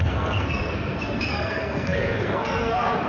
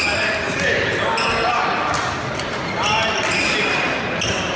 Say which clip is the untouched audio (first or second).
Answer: second